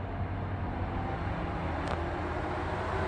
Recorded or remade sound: recorded